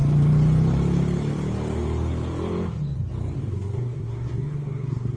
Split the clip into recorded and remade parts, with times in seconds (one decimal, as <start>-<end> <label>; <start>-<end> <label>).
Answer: 0.0-3.5 recorded; 3.5-5.2 remade